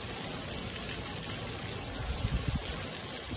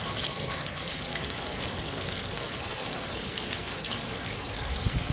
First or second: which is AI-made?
second